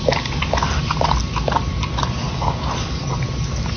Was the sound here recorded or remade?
recorded